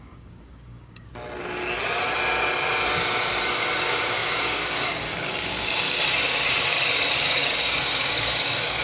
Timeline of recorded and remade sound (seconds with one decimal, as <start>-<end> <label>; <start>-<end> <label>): 0.0-1.1 remade; 1.1-3.4 recorded; 3.4-8.8 remade